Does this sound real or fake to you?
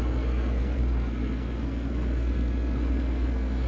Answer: fake